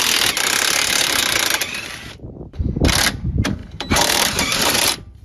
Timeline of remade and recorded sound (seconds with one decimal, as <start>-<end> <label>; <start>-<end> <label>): 0.0-3.6 recorded; 3.6-4.7 remade; 4.7-5.2 recorded